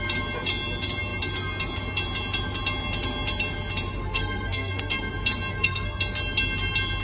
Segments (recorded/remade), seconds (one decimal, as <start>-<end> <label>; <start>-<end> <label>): 0.0-4.0 recorded; 4.0-5.1 remade; 5.1-5.5 recorded; 5.5-6.0 remade; 6.0-7.0 recorded